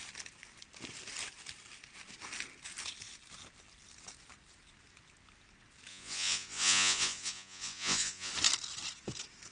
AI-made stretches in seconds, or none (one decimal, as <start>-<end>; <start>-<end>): 5.9-8.3